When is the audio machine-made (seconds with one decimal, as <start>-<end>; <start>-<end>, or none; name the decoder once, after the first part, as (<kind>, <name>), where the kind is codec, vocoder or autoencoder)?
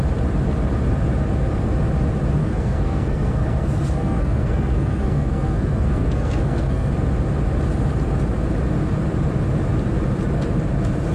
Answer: 2.4-6.9 (codec, SNAC)